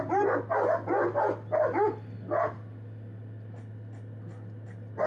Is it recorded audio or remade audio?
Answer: recorded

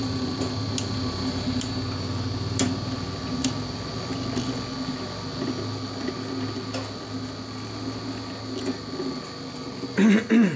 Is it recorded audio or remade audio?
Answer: recorded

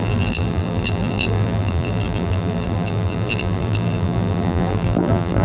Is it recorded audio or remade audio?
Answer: remade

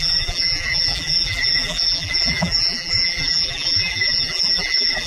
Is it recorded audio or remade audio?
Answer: remade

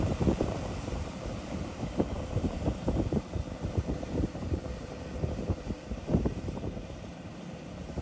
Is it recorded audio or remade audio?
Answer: remade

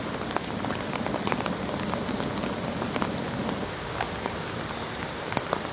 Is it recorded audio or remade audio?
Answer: recorded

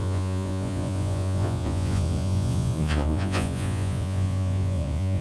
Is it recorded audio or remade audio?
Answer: remade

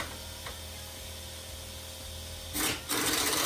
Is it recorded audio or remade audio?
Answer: recorded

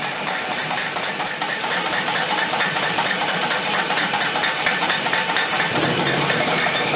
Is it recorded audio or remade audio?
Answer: remade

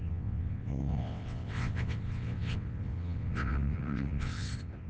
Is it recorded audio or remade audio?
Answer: remade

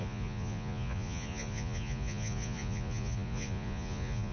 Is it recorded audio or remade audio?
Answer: remade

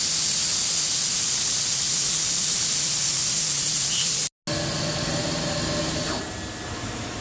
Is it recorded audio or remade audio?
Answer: recorded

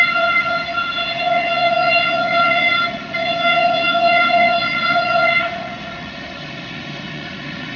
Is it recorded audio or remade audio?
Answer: remade